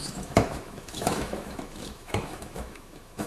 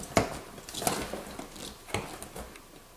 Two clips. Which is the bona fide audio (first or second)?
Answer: second